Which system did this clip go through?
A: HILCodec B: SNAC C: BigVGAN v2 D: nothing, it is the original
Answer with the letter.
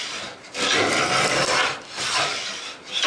D